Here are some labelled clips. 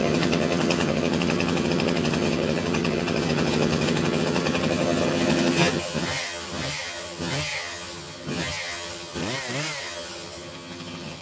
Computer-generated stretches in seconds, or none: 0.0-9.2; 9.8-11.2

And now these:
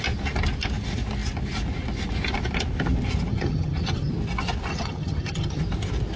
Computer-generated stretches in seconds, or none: 3.3-4.1; 4.7-5.6

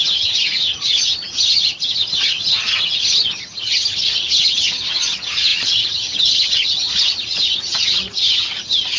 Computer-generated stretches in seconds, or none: 0.0-9.0